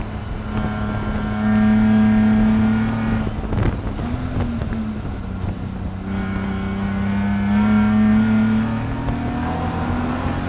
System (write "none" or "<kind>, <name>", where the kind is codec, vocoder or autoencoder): none